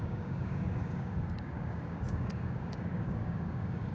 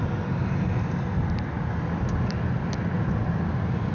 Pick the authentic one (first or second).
second